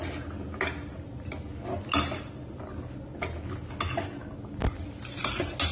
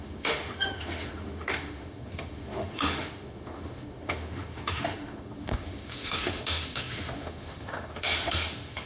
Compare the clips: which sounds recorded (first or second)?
first